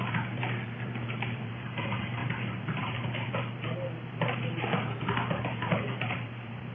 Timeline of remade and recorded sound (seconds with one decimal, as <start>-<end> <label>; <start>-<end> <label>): 0.0-6.7 remade